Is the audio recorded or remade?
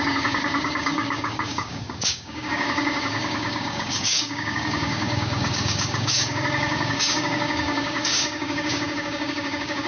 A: remade